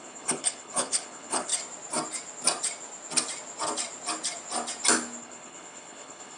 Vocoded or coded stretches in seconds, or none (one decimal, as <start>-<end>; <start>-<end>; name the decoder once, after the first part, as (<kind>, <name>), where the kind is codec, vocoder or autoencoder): 0.0-1.5 (codec, HILCodec); 5.2-6.4